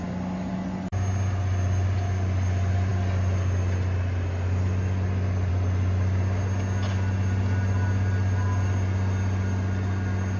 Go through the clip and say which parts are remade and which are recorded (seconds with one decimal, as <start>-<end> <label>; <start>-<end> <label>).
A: 0.0-10.4 recorded